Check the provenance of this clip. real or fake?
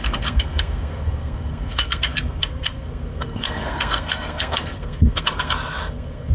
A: fake